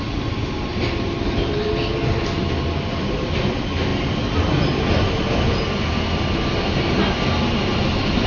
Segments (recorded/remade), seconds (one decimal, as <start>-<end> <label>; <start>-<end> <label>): 0.0-8.3 recorded